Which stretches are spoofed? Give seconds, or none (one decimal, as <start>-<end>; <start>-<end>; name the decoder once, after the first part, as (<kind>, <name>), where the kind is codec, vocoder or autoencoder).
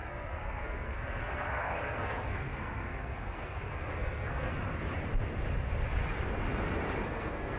0.0-4.6 (codec, SNAC); 7.0-7.6